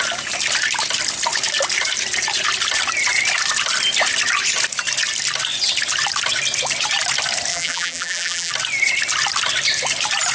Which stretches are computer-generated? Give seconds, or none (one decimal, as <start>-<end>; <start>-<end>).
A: 7.5-8.5